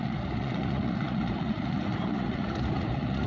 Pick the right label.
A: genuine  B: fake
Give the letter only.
B